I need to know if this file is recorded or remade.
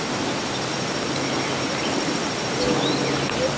recorded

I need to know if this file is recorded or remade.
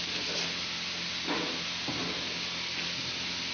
recorded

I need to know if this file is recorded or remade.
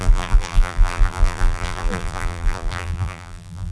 remade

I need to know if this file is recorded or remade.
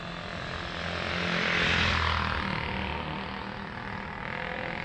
recorded